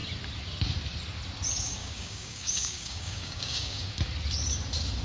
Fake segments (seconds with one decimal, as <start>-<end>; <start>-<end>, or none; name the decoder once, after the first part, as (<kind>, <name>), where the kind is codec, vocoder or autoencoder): 1.8-3.9 (codec, DAC)